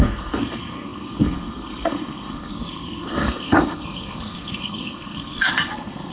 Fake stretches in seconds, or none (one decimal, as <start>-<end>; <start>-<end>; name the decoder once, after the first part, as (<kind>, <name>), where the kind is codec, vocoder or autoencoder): 0.0-6.1 (codec, SNAC)